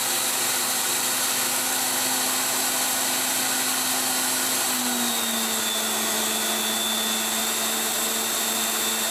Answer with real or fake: real